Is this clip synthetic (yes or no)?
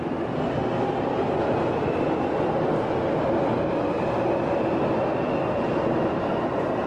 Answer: no